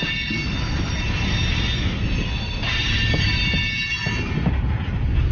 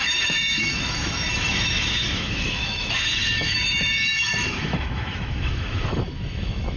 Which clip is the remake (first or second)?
second